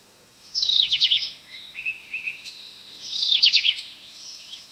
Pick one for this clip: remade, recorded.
remade